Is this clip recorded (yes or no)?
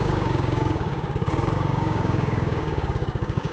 no